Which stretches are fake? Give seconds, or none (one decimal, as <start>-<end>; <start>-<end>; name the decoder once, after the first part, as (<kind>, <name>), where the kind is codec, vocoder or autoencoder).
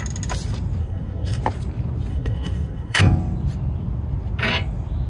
0.8-1.4 (codec, SNAC); 2.1-3.0